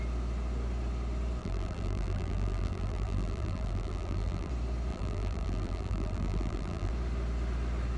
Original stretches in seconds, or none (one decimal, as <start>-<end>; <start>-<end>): 0.0-1.4; 4.5-4.9; 6.9-8.0